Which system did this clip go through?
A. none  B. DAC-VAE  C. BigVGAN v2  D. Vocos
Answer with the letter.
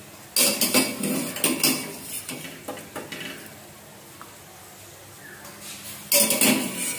A